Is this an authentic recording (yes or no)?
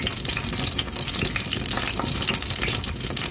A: yes